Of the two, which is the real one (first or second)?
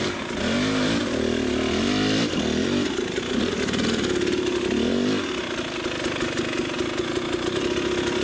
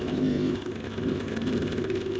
first